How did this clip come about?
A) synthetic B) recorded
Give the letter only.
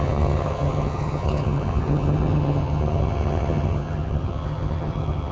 A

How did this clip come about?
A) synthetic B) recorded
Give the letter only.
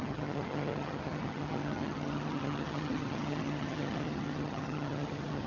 A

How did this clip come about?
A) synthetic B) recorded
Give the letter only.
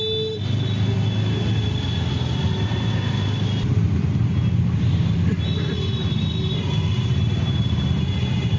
B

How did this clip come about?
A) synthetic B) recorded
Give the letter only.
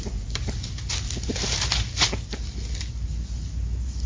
B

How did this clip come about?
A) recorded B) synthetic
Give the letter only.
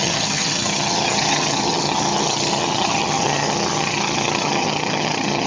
B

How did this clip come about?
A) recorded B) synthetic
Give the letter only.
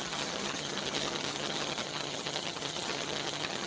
B